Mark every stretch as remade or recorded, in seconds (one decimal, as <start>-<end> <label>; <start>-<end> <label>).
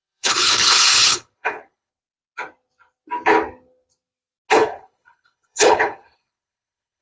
0.0-1.9 remade; 1.9-4.5 recorded; 4.5-7.0 remade